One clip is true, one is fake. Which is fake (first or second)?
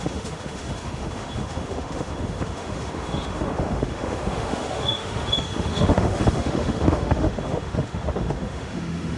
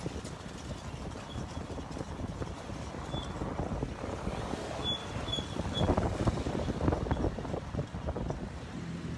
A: first